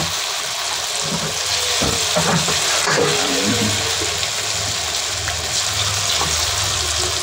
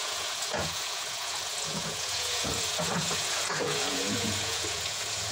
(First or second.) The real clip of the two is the first